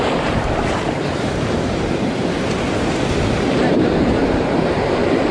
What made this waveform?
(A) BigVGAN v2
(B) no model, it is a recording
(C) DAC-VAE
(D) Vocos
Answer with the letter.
A